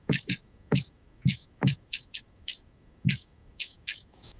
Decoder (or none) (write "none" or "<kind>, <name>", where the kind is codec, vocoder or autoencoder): autoencoder, DAC-VAE